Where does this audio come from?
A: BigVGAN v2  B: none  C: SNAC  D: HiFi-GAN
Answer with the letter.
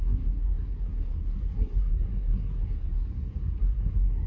C